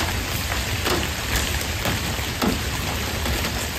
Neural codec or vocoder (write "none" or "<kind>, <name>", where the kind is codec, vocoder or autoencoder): none